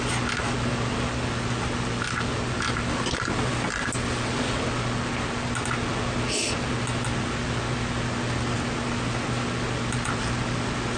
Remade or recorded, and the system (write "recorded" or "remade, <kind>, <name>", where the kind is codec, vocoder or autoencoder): recorded